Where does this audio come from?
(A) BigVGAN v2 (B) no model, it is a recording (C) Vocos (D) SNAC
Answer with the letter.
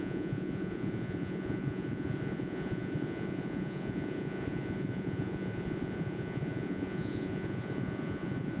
C